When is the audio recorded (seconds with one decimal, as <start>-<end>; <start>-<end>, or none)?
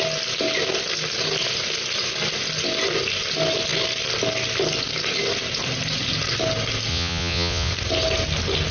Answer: 0.0-6.9; 7.7-8.7